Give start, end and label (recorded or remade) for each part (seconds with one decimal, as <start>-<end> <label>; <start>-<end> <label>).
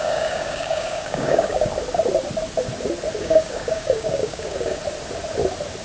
0.0-1.7 remade; 1.7-3.2 recorded; 3.2-4.8 remade; 4.8-5.8 recorded